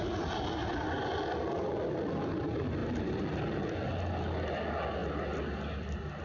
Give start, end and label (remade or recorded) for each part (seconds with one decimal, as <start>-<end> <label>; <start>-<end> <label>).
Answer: 0.0-0.7 recorded; 0.7-1.6 remade; 1.6-2.8 recorded; 2.8-3.3 remade; 3.3-6.2 recorded